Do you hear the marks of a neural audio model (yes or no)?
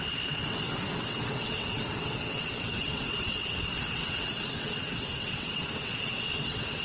yes